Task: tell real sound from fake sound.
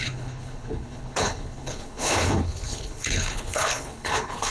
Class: fake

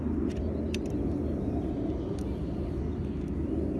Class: real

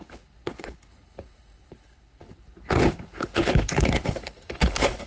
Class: fake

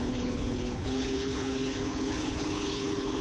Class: fake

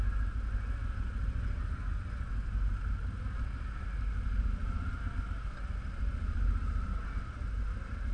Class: real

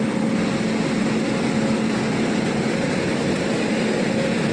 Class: real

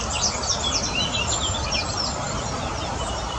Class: real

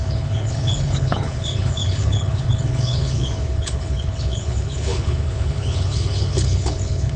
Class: fake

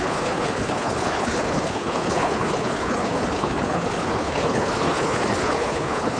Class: fake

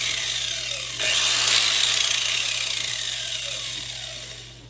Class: real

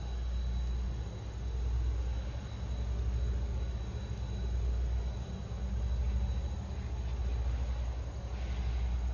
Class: real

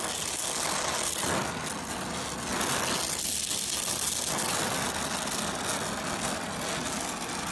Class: real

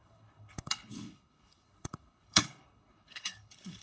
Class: fake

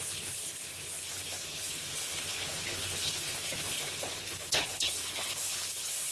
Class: fake